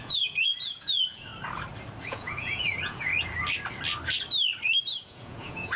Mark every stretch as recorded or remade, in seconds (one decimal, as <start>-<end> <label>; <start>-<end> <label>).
0.0-1.3 remade; 1.3-2.0 recorded; 2.0-3.1 remade; 3.1-4.8 recorded; 4.8-5.8 remade